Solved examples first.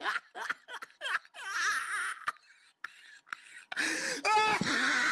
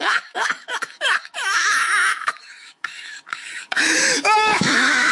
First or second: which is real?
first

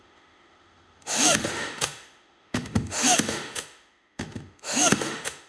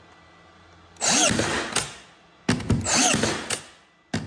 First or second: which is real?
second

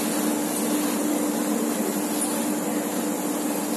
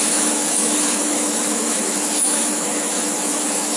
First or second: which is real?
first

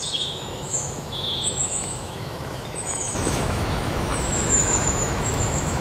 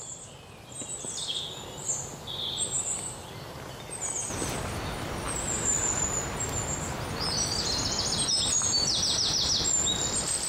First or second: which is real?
second